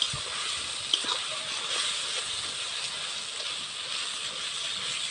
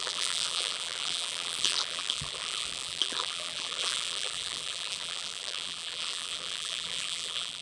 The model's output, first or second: second